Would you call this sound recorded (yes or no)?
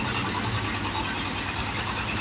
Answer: yes